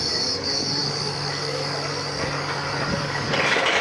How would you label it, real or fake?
fake